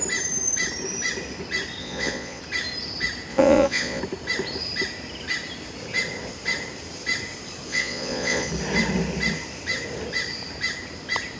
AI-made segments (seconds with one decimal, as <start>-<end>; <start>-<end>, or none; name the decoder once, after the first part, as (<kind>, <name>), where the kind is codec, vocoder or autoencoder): 1.8-2.4 (vocoder, Vocos); 3.3-4.0; 7.7-8.5